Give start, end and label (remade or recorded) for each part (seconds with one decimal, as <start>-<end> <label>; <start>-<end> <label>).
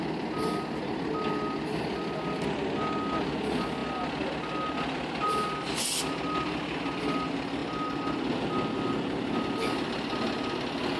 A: 0.0-11.0 recorded